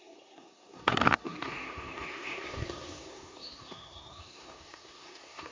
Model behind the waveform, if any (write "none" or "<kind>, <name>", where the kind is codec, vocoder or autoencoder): codec, SNAC